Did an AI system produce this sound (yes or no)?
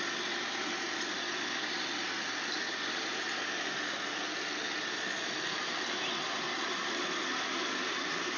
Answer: no